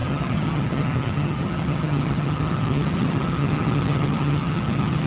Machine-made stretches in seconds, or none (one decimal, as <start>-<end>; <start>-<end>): 0.0-5.1